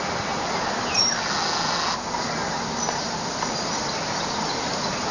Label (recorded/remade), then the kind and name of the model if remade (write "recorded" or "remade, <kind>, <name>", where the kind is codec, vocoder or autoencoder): recorded